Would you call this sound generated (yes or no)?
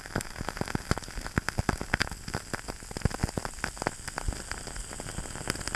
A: no